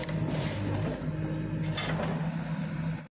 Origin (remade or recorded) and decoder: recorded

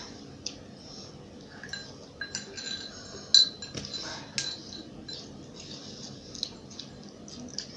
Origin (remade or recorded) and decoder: recorded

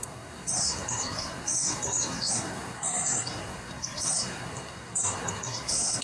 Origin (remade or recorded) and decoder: remade, codec, SNAC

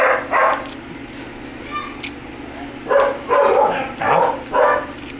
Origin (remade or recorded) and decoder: recorded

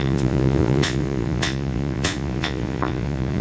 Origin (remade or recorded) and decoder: remade, vocoder, Vocos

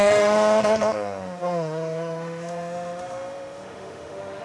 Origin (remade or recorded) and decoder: remade, autoencoder, DAC-VAE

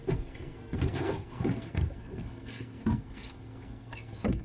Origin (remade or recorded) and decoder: remade, codec, SNAC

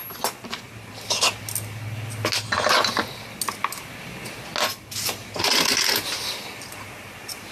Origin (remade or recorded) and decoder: recorded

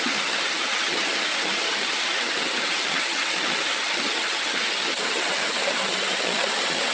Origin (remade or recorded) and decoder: remade, vocoder, HiFi-GAN